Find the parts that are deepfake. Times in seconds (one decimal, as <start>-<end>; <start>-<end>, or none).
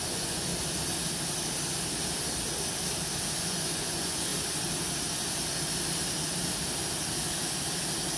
0.0-0.5; 3.4-4.3